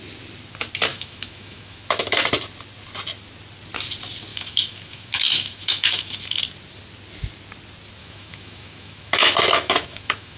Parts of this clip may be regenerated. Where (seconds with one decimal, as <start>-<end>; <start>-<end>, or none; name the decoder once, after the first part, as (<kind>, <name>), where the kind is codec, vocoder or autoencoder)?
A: 0.9-2.2 (autoencoder, DAC-VAE); 4.3-6.4; 8.0-10.4